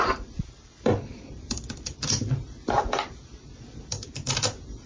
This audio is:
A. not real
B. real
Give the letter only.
A